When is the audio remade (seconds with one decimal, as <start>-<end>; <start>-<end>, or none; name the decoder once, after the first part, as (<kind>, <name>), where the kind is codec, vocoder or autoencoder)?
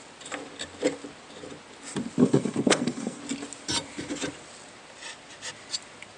2.2-3.2 (codec, SNAC)